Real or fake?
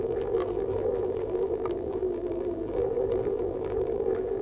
fake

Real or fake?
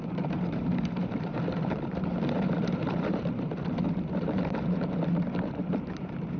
fake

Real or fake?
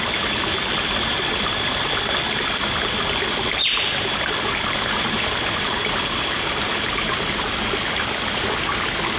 real